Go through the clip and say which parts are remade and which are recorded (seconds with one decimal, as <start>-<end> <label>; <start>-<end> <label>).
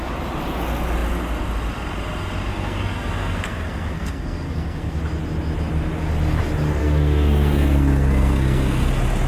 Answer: 0.0-2.5 recorded; 2.5-5.0 remade; 5.0-6.8 recorded; 6.8-8.9 remade; 8.9-9.3 recorded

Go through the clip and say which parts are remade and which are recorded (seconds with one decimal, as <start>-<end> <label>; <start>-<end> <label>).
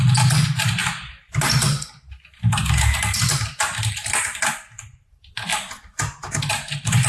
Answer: 0.0-7.1 recorded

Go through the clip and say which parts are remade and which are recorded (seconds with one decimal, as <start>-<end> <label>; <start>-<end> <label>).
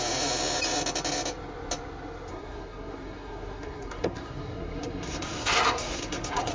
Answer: 0.0-2.3 recorded; 2.3-6.5 remade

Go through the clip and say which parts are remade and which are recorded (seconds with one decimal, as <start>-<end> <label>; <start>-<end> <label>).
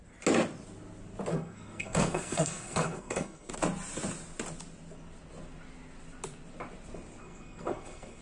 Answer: 0.0-1.3 recorded; 1.3-3.5 remade; 3.5-7.2 recorded; 7.2-8.2 remade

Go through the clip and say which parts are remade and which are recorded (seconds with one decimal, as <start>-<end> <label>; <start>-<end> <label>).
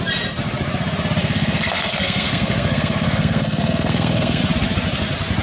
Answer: 0.0-1.2 recorded; 1.2-4.4 remade; 4.4-5.4 recorded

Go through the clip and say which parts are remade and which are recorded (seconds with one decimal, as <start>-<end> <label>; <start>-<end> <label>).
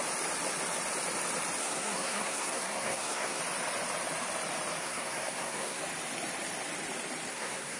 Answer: 0.0-1.6 recorded; 1.6-3.4 remade; 3.4-4.8 recorded; 4.8-5.8 remade; 5.8-7.3 recorded; 7.3-7.8 remade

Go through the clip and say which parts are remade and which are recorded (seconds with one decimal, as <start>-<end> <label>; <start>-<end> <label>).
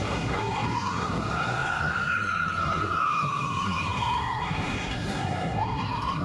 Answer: 0.0-6.2 remade